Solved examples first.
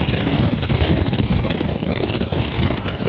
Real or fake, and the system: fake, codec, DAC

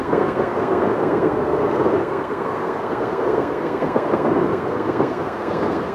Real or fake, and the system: fake, codec, SNAC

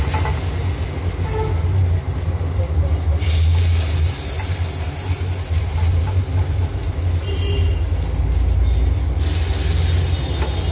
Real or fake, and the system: real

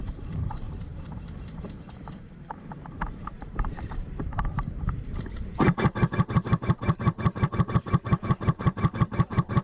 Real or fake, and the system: fake, vocoder, BigVGAN v2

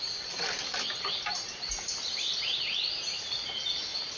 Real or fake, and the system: real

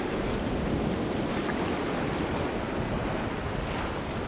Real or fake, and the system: real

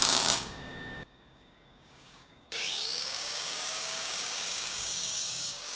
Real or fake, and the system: fake, codec, DAC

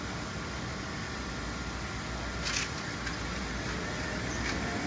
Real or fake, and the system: real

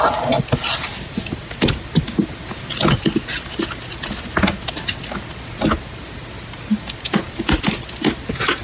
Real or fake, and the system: real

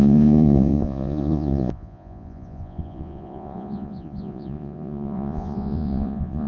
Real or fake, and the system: fake, vocoder, Vocos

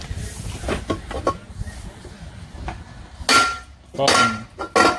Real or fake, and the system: real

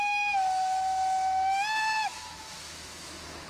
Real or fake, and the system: fake, autoencoder, DAC-VAE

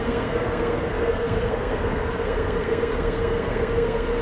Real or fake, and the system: fake, codec, SNAC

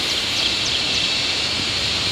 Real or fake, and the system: fake, vocoder, BigVGAN v2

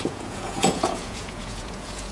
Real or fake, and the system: fake, vocoder, Vocos